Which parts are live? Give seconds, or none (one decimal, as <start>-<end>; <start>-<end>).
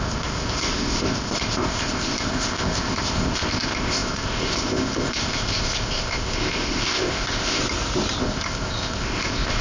7.6-8.2